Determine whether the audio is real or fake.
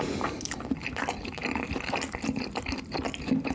real